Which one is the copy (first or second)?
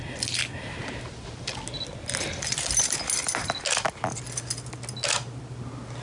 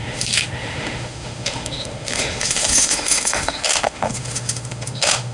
second